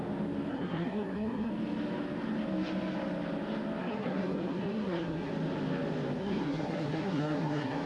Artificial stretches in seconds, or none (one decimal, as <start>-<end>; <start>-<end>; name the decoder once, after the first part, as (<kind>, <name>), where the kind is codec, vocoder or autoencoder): 0.5-1.5 (codec, SNAC); 3.8-5.3; 6.2-7.9